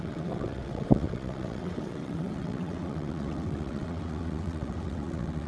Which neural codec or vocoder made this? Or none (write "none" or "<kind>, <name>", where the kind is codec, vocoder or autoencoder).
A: vocoder, WaveNeXt